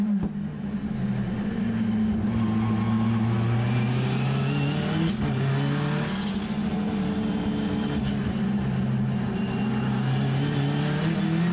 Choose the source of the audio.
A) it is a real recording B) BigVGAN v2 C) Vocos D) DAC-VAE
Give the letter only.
A